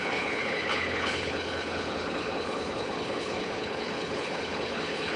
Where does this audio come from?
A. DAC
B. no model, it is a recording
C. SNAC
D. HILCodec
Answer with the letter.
D